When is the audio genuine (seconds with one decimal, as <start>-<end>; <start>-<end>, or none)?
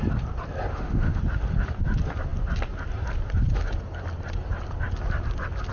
0.0-0.7; 1.2-5.7